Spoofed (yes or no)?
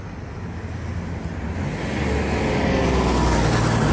no